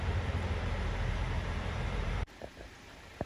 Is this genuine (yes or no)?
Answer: no